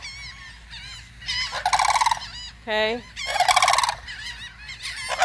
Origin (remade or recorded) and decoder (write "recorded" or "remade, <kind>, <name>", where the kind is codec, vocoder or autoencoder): recorded